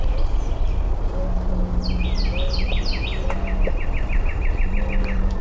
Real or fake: real